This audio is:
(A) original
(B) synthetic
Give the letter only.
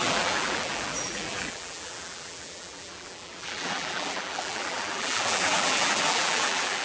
B